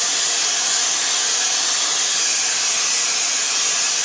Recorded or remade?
recorded